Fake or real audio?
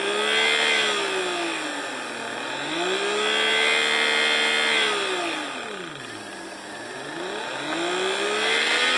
real